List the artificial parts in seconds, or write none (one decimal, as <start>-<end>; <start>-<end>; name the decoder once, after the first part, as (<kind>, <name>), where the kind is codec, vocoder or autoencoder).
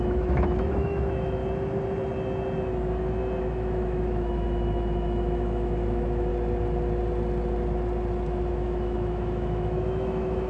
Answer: 0.0-1.4 (autoencoder, DAC-VAE); 3.4-6.3; 8.5-10.5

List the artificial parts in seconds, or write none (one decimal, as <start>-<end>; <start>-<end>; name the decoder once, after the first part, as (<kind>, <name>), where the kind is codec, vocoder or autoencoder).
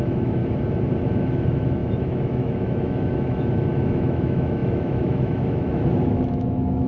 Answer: 0.0-0.4 (autoencoder, DAC-VAE); 1.0-6.9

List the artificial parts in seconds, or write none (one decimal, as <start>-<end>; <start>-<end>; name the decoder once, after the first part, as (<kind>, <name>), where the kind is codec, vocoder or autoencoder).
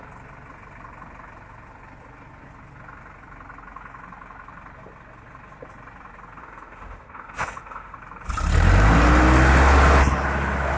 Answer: 6.4-8.0 (autoencoder, DAC-VAE)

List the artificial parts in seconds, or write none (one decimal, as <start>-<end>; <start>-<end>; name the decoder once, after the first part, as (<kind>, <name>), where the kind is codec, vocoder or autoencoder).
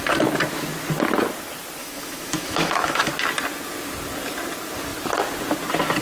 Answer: 1.8-3.1 (autoencoder, DAC-VAE)